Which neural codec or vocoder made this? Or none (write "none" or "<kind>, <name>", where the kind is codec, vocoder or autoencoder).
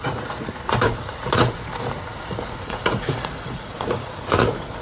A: vocoder, Vocos